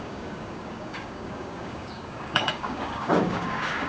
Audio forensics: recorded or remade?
remade